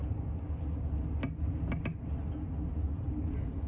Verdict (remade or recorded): recorded